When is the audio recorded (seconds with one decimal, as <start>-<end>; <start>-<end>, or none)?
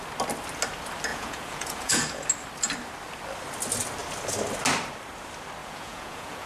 0.0-1.1; 2.3-5.6